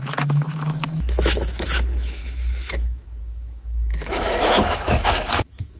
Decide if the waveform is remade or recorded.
remade